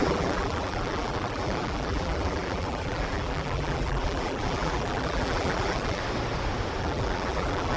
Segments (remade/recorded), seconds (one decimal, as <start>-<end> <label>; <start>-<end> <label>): 0.0-6.0 remade; 6.0-6.8 recorded; 6.8-7.8 remade